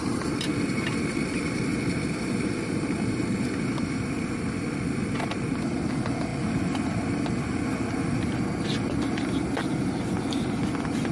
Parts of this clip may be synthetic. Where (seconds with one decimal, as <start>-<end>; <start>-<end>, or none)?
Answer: none